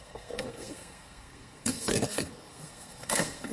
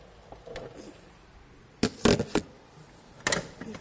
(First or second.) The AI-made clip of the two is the first